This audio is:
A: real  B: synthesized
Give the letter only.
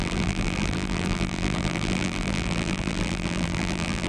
B